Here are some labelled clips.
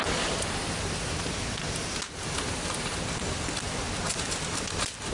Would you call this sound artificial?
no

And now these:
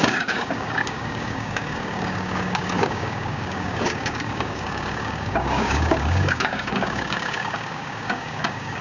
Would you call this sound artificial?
yes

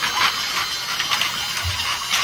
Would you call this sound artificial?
no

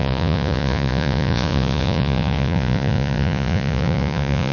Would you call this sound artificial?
yes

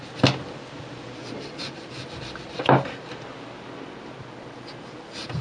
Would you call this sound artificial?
no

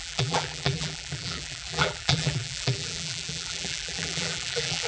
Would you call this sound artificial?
yes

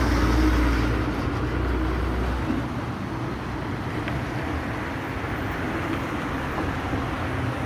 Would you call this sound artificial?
no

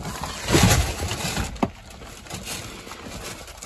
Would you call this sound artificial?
no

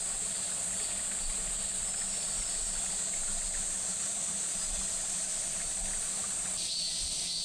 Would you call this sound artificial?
no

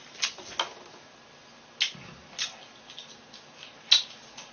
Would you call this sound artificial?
no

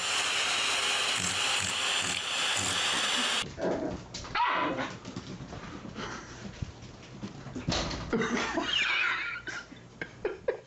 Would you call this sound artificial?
no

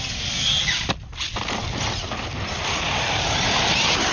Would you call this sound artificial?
no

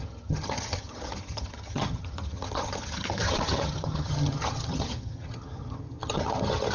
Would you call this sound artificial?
yes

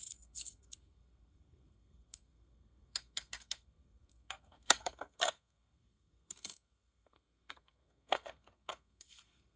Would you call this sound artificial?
yes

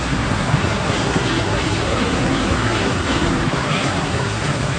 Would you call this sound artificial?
yes